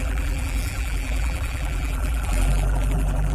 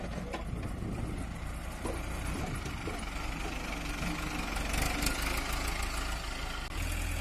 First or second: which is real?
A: second